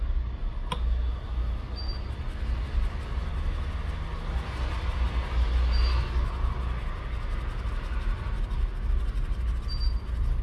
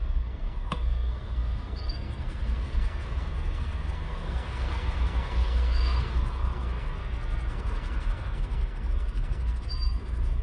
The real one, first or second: first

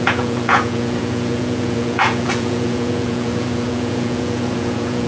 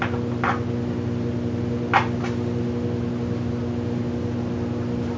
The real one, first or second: second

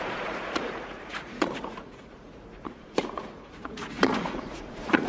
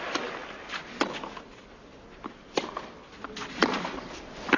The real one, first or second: second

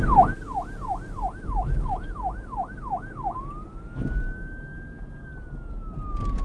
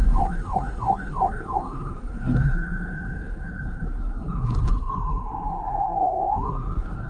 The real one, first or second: first